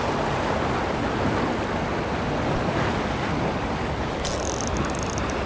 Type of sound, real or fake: real